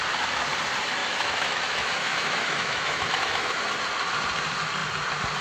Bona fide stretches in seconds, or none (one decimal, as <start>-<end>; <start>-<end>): 0.0-1.0; 3.6-5.4